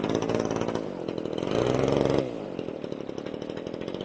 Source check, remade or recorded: recorded